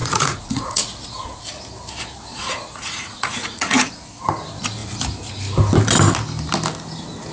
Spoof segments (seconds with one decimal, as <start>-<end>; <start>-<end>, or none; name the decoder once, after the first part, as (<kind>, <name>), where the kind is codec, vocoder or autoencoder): 0.0-1.4 (vocoder, Vocos); 2.3-3.9